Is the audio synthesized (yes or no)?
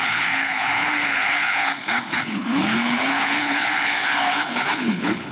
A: yes